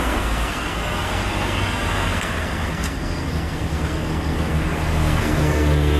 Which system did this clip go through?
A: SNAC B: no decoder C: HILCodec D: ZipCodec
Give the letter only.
A